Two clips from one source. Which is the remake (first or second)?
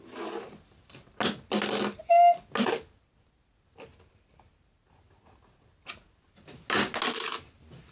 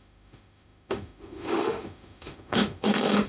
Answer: second